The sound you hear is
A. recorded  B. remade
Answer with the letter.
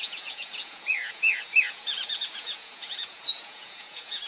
B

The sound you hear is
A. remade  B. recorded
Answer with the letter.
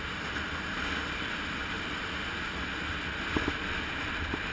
B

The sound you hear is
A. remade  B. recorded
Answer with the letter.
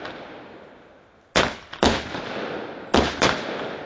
B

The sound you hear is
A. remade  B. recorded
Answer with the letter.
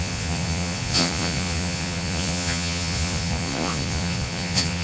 A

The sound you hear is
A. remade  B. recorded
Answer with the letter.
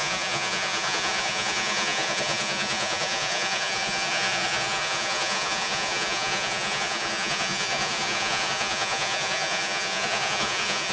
A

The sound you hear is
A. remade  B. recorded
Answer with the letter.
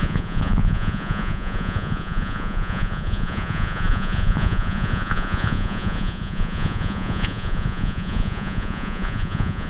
A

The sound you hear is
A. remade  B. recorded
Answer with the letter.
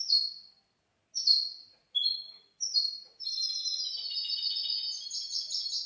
B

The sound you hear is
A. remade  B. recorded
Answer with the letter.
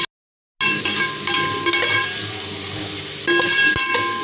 B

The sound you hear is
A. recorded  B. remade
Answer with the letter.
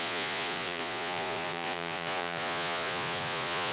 B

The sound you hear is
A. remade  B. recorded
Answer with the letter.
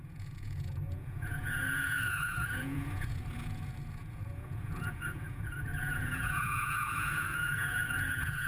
A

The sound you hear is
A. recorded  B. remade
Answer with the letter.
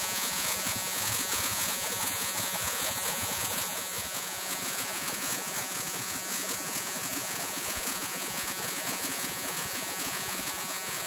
B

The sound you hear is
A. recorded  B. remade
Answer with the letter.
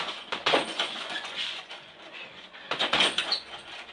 B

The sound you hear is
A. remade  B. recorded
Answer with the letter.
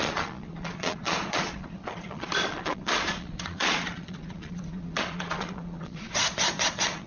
A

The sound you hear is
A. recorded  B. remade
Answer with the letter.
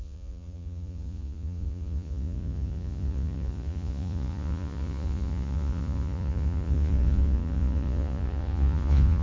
B